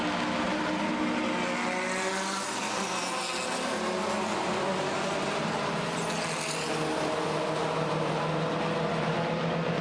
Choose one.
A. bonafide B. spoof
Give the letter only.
A